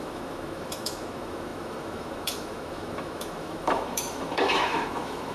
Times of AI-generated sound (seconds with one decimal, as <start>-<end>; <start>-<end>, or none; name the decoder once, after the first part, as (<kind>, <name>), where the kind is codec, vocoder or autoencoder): 0.0-5.3 (autoencoder, DAC-VAE)